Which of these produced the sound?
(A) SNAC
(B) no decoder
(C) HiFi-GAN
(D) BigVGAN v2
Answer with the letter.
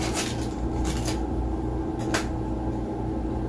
B